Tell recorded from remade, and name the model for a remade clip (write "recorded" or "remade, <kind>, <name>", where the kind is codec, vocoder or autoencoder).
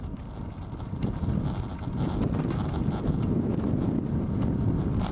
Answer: recorded